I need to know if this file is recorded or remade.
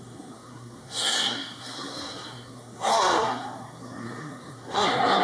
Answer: remade